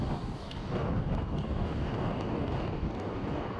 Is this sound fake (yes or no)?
yes